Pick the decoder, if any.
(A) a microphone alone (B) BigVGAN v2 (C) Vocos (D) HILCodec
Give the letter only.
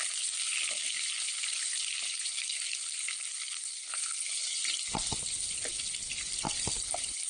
A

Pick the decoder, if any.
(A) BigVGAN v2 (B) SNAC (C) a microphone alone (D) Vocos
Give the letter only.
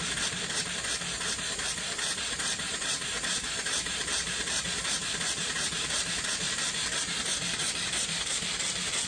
A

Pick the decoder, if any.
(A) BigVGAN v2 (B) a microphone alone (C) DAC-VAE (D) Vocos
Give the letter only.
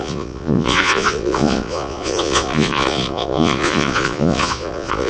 D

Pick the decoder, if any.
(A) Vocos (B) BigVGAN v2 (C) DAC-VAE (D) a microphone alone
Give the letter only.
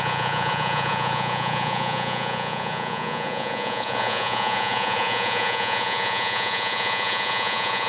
A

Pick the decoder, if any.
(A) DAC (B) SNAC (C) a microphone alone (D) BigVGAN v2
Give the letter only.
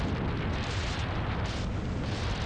D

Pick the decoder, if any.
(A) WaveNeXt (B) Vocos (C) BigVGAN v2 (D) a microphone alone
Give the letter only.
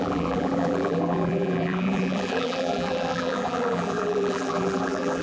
C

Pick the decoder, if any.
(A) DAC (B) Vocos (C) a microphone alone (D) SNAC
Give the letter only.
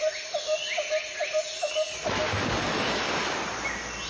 C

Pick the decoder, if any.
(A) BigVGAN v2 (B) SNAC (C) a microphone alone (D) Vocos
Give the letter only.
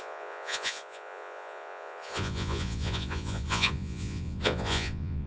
D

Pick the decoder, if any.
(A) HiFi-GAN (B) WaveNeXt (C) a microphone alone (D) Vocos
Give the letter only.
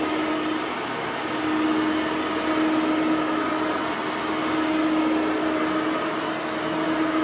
C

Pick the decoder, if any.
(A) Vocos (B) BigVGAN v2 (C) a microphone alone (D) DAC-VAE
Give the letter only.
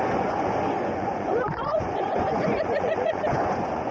A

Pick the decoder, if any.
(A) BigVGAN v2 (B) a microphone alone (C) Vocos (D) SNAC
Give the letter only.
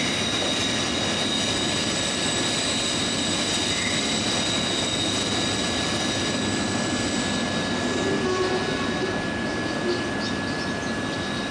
B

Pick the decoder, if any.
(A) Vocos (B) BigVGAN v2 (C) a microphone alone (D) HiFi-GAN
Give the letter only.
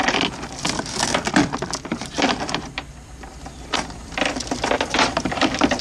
B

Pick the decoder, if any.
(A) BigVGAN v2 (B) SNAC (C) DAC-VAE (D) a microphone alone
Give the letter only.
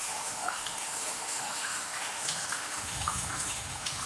C